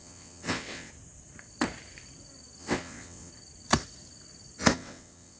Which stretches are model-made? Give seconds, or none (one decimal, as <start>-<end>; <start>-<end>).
0.0-0.9; 2.6-3.3; 4.7-5.4